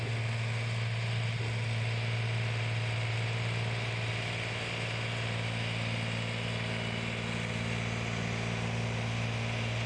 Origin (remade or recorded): recorded